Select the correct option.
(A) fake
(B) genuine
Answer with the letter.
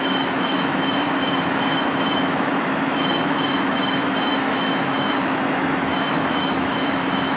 A